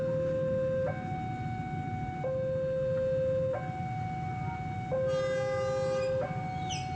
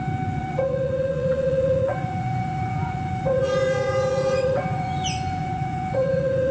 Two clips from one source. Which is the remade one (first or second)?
second